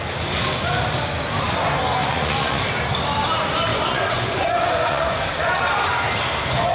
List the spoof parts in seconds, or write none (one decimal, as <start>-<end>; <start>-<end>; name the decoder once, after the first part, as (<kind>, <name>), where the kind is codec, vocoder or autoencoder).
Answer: 2.0-2.6 (vocoder, Vocos); 3.7-5.6